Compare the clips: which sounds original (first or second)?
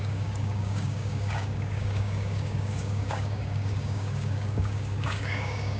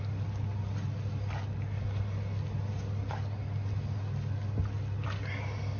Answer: second